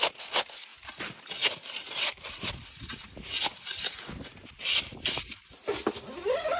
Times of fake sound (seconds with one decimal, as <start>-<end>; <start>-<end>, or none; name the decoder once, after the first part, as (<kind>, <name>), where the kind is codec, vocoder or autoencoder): none